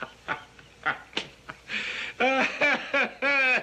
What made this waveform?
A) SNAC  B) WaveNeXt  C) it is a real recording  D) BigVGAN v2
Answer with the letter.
C